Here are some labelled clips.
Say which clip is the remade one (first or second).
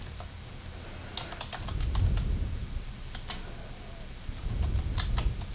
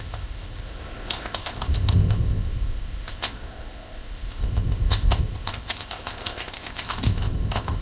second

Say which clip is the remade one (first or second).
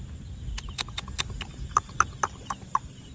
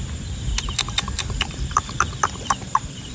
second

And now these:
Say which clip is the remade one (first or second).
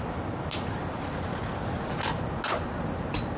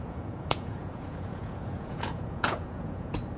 second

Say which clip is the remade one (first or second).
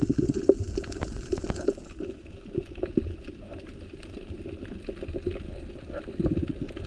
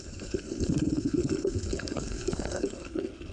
second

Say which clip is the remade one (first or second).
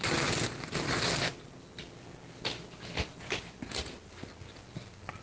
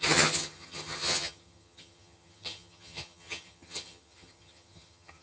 second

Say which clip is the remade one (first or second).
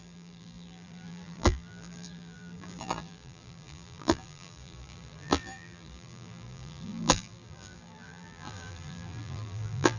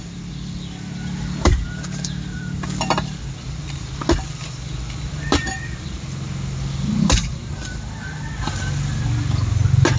first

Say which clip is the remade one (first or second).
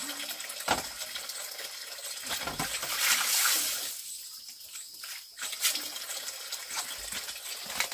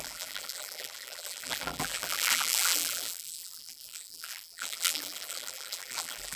second